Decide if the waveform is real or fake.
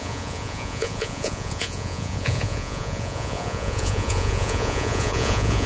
fake